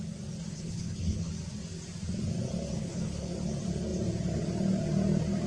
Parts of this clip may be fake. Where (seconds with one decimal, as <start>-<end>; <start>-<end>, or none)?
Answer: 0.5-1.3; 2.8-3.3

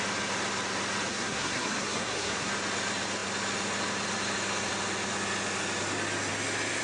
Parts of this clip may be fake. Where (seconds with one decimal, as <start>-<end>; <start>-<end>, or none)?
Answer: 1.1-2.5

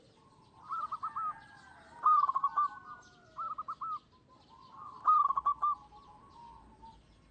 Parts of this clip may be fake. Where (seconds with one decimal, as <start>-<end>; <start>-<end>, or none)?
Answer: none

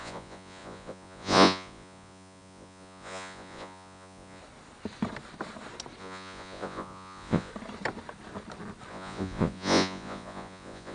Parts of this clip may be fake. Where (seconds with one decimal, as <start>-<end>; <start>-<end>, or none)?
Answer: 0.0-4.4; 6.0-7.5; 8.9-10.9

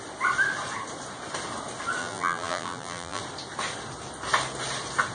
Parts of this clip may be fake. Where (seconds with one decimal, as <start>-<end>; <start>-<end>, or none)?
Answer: 2.0-3.2

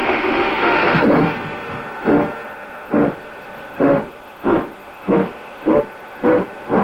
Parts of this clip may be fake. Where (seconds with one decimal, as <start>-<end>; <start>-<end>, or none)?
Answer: 0.0-6.8

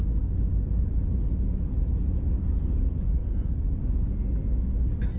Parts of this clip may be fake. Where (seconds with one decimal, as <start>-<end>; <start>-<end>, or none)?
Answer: 3.2-3.8